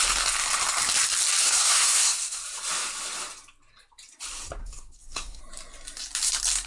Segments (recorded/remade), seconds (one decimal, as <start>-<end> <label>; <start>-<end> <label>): 0.0-1.4 recorded; 1.4-2.4 remade; 2.4-4.6 recorded; 4.6-5.4 remade; 5.4-6.7 recorded